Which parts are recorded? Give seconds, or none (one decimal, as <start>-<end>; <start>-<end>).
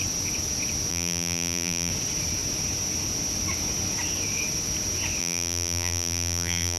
0.0-0.9; 1.9-5.2